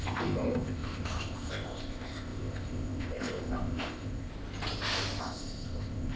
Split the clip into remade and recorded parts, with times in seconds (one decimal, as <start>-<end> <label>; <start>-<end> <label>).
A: 0.0-4.3 remade; 4.3-5.2 recorded; 5.2-6.2 remade